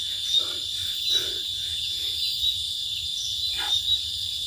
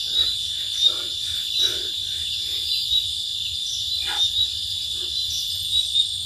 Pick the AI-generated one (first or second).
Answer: first